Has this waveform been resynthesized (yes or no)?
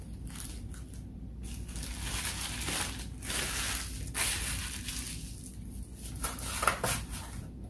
no